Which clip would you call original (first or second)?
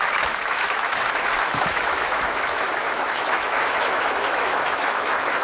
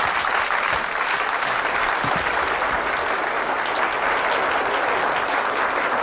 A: second